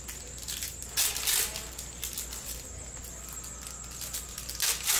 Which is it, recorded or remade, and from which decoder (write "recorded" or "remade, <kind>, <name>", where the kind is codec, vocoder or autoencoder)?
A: recorded